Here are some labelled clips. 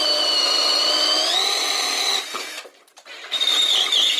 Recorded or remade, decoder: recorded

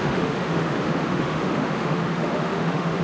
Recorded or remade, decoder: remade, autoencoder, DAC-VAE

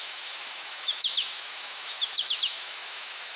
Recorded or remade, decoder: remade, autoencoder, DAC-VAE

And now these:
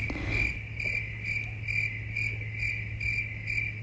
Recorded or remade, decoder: recorded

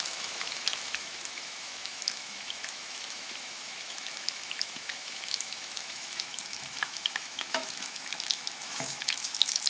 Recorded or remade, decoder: remade, autoencoder, DAC-VAE